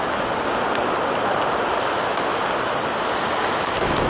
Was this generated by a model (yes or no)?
no